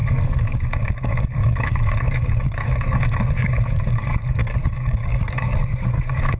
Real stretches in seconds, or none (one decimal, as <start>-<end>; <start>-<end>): none